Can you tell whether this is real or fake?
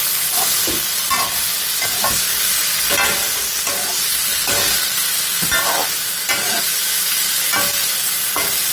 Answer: real